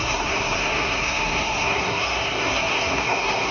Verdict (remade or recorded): remade